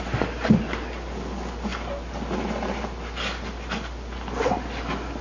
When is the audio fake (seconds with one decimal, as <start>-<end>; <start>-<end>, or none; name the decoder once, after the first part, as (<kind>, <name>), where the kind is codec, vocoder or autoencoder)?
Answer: none